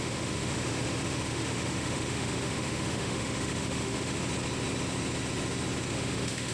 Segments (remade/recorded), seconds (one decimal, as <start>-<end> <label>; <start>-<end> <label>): 0.0-4.2 remade; 4.2-5.9 recorded; 5.9-6.5 remade